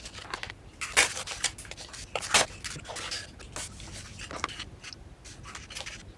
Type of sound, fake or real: real